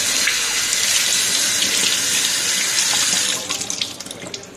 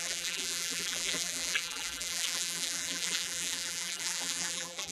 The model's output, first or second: second